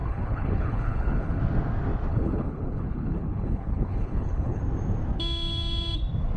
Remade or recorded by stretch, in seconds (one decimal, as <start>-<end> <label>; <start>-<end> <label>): 0.0-1.4 remade; 1.4-2.1 recorded; 2.1-4.6 remade; 4.6-6.4 recorded